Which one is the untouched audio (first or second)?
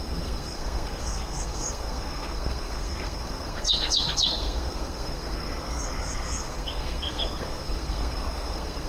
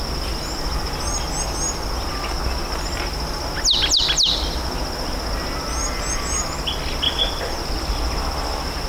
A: second